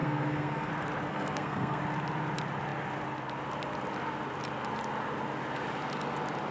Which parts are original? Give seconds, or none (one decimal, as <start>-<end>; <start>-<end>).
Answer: 0.7-1.1; 1.8-6.5